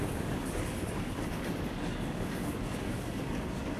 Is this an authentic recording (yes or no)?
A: no